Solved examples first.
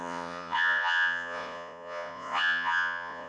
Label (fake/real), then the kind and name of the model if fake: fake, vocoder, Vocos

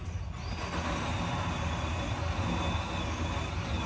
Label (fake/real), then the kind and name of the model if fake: real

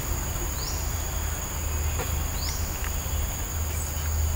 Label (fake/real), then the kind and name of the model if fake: real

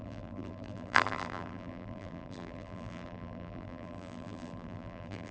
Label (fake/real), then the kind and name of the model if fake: fake, vocoder, BigVGAN v2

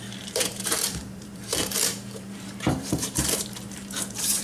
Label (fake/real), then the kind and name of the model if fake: fake, vocoder, BigVGAN v2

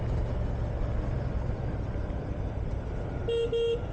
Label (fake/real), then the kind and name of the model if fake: real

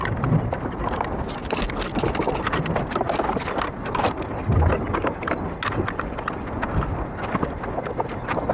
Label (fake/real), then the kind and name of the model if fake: real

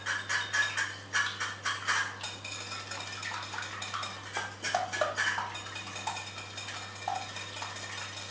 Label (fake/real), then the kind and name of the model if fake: real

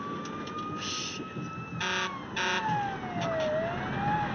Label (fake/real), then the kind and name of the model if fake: real